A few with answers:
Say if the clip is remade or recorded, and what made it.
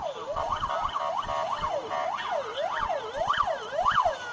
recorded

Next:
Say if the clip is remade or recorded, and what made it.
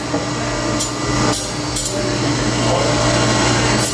recorded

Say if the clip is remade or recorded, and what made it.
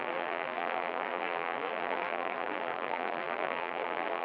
remade, vocoder, BigVGAN v2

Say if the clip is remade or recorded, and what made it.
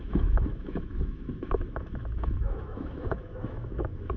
remade, autoencoder, DAC-VAE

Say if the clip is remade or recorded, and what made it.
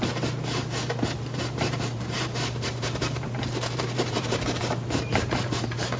remade, vocoder, BigVGAN v2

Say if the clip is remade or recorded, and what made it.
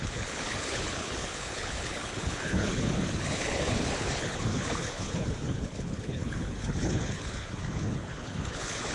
remade, codec, HILCodec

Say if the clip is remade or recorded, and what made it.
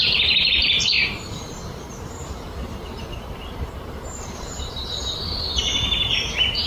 remade, vocoder, BigVGAN v2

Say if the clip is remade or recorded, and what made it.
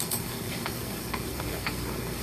remade, codec, SNAC